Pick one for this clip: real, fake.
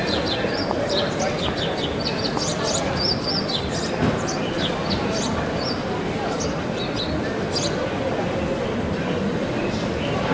real